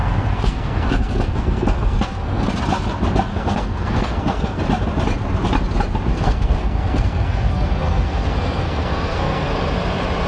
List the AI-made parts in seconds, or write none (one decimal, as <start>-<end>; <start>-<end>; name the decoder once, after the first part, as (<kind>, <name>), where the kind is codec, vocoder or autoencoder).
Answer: 0.0-2.5 (codec, SNAC); 3.3-4.6; 6.1-9.5